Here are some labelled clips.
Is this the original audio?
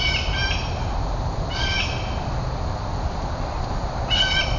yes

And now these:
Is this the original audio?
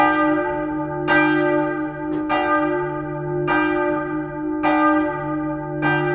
yes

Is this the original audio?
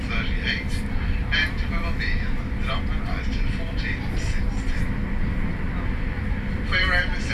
no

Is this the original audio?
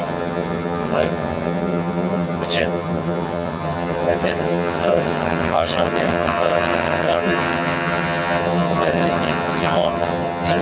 no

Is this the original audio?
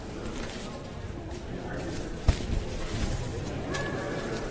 no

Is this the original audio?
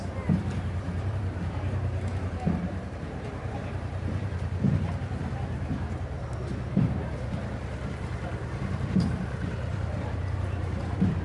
no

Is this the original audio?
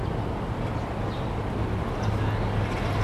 yes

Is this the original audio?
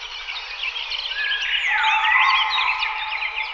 yes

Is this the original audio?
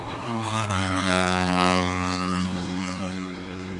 no